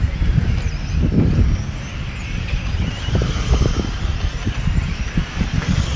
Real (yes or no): no